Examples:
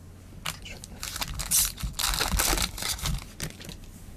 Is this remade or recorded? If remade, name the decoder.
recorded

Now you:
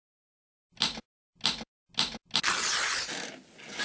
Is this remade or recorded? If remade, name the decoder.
recorded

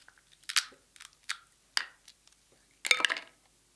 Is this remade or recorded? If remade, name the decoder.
recorded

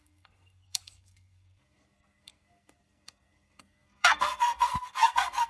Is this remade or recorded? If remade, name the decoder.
remade, codec, SNAC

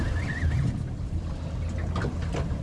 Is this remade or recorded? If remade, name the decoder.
recorded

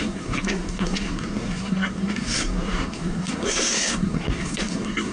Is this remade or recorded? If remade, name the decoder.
remade, codec, SNAC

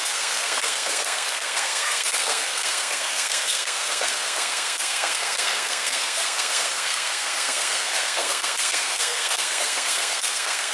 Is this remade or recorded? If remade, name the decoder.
remade, codec, SNAC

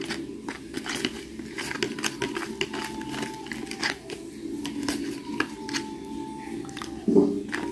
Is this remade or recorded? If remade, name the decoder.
recorded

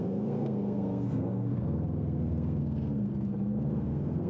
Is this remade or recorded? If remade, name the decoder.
remade, codec, SNAC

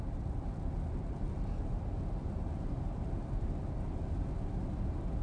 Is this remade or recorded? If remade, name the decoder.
recorded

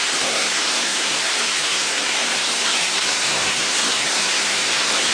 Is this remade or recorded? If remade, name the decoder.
remade, codec, SNAC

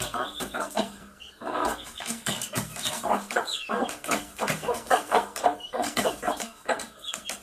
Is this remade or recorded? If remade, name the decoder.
remade, codec, SNAC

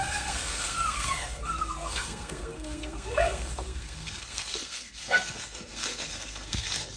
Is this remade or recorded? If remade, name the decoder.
remade, codec, SNAC